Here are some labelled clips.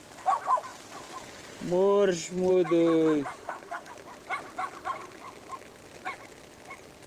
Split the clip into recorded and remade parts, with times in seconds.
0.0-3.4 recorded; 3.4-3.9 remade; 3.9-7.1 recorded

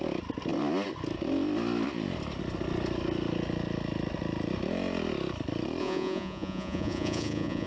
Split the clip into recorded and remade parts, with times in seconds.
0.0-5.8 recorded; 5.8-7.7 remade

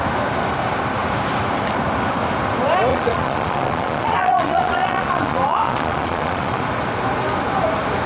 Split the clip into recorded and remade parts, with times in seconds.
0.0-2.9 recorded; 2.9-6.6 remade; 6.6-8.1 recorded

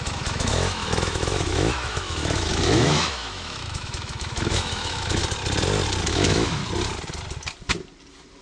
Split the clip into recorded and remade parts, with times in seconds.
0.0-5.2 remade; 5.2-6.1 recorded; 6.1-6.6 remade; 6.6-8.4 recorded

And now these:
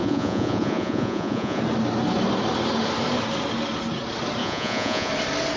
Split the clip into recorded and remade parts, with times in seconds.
0.0-1.6 remade; 1.6-4.4 recorded; 4.4-5.1 remade; 5.1-5.6 recorded

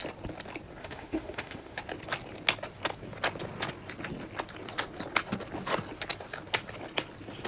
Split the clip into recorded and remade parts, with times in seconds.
0.0-0.8 recorded; 0.8-1.8 remade; 1.8-7.5 recorded

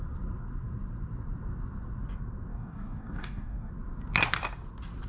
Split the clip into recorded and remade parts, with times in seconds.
0.0-2.5 recorded; 2.5-3.7 remade; 3.7-5.1 recorded

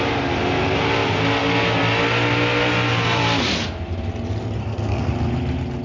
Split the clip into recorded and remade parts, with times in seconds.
0.0-4.6 recorded; 4.6-5.1 remade; 5.1-5.8 recorded